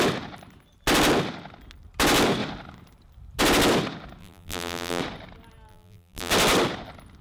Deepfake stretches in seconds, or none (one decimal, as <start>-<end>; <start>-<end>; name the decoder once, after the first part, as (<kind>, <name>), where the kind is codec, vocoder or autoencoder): 4.2-5.0 (vocoder, BigVGAN v2); 5.7-6.3